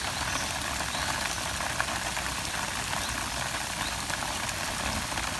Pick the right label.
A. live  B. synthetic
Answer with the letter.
A